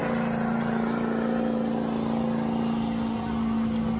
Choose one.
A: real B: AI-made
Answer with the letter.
A